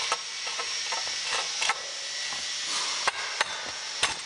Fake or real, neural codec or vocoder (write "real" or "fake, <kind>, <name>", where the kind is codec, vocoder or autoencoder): real